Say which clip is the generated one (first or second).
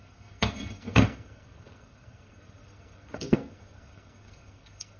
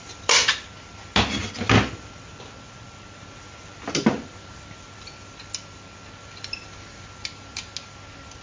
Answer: first